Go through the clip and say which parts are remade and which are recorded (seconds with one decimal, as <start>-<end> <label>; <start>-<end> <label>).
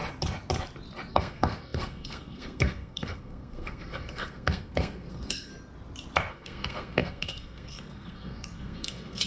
0.0-1.1 recorded; 1.1-5.5 remade; 5.5-6.3 recorded; 6.3-9.3 remade